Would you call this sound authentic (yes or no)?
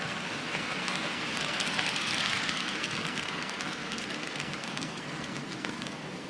no